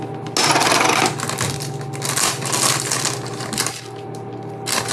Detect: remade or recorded recorded